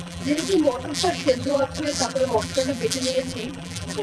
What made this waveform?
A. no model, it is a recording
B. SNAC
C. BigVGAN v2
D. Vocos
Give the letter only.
C